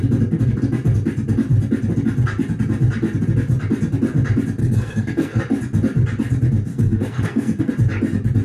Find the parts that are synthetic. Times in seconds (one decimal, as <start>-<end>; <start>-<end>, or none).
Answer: 4.6-5.4; 6.7-7.7

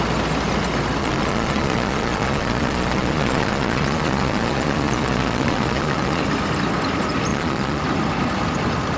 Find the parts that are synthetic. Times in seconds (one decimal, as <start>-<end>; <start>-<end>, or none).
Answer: 1.0-6.2; 7.3-7.8

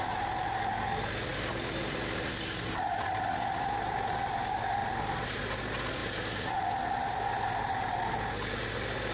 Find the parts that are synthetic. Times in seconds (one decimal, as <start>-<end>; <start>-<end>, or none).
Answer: 1.3-2.4; 4.8-5.6